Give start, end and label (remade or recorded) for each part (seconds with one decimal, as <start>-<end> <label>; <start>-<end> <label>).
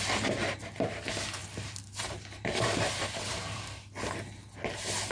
0.0-1.4 recorded; 1.4-3.3 remade; 3.3-5.1 recorded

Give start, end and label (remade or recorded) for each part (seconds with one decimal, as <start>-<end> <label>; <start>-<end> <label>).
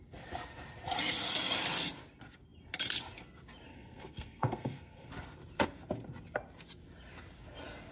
0.0-3.7 recorded; 3.7-5.1 remade; 5.1-7.9 recorded